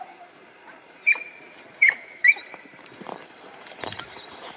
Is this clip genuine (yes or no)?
no